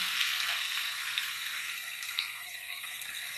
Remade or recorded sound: remade